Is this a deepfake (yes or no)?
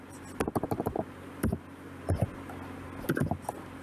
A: no